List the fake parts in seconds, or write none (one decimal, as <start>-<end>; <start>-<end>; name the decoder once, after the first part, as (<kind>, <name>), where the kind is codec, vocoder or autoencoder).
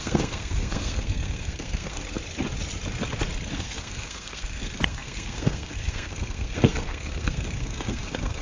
0.0-2.0 (codec, SNAC); 3.5-8.4